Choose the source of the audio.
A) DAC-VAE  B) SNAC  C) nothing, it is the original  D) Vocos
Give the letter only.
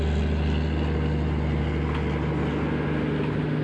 C